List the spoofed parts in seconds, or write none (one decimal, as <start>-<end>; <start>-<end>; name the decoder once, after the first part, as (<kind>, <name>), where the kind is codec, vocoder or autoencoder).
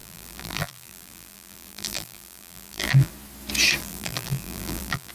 0.0-3.1 (vocoder, BigVGAN v2); 3.8-5.1